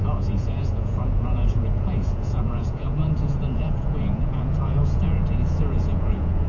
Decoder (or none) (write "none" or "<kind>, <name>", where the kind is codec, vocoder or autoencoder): vocoder, Vocos